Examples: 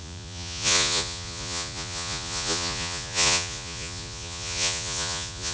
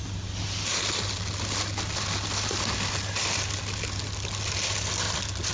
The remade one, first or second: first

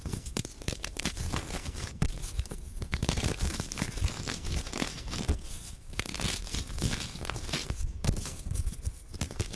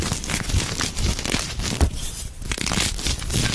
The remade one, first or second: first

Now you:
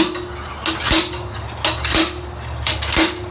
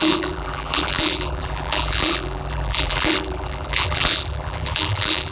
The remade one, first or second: second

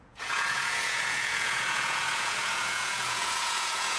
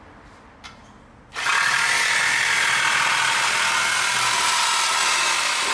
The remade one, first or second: first